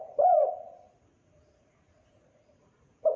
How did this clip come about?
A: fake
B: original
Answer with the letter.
A